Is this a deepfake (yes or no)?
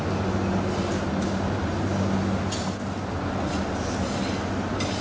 no